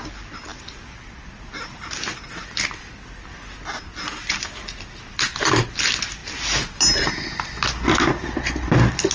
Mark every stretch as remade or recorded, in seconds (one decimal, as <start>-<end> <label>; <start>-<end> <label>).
0.0-9.1 recorded

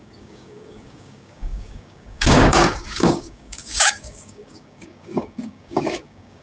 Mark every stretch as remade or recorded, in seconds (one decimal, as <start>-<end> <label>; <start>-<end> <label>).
0.0-6.4 remade

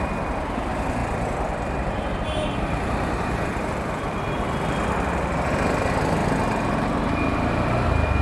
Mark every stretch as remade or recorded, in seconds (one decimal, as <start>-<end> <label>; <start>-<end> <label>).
0.0-8.2 recorded

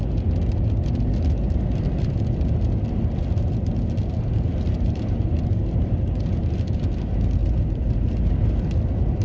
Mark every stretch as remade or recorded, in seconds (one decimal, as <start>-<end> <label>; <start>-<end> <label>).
0.0-7.4 recorded; 7.4-8.3 remade; 8.3-9.2 recorded

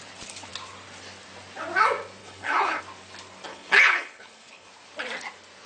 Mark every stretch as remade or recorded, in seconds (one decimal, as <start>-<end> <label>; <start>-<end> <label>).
0.0-2.2 recorded; 2.2-2.8 remade; 2.8-3.5 recorded; 3.5-4.7 remade; 4.7-5.7 recorded